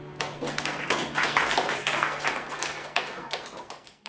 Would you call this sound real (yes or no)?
no